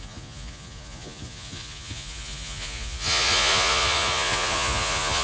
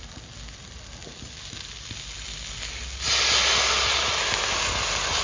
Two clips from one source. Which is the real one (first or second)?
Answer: second